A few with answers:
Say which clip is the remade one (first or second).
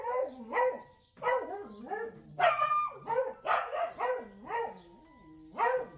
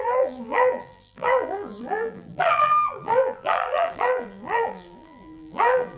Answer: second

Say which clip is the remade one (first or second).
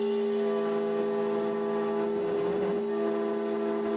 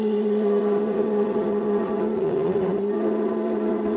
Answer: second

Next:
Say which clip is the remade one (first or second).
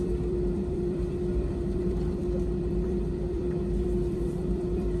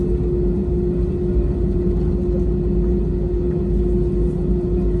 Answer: first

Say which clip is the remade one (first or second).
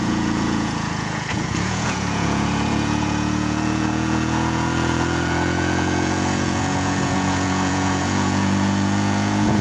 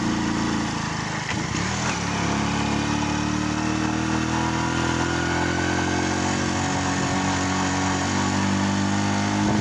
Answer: first